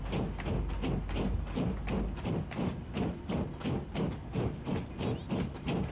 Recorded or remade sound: recorded